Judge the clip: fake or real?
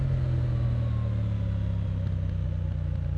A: real